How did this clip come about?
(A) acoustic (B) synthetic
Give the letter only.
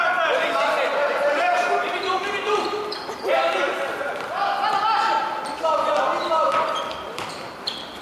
B